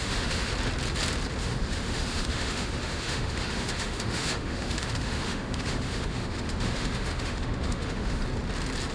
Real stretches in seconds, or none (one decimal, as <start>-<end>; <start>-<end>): 0.5-1.4; 8.2-8.9

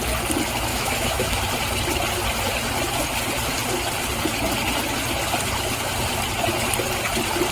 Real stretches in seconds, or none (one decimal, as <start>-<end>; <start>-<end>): 0.0-0.7; 1.4-7.5

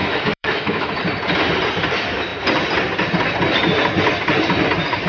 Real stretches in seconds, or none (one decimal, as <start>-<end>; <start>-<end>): 0.9-5.1

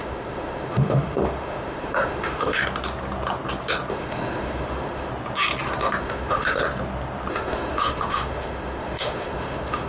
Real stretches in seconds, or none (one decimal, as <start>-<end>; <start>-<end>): 2.6-3.9; 5.1-6.0; 6.6-7.3

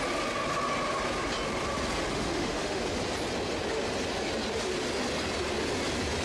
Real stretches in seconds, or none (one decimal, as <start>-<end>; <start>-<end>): 0.0-2.1; 2.8-6.2

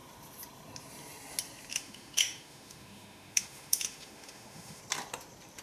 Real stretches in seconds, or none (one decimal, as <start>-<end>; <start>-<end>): 0.0-1.7; 4.8-5.6

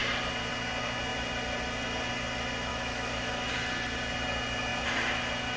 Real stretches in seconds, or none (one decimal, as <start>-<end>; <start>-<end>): 0.0-2.7; 3.5-5.6